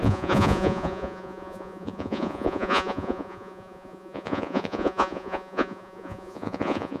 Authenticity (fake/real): fake